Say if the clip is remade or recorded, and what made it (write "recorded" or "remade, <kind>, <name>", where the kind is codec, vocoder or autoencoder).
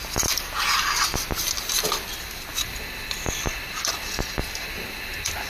recorded